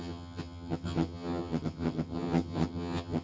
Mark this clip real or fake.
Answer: fake